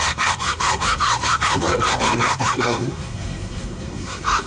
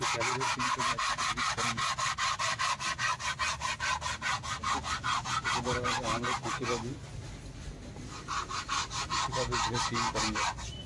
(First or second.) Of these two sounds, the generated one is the first